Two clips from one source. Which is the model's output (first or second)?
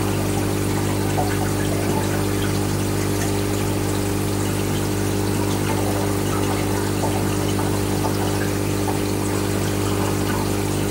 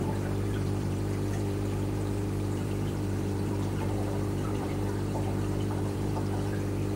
second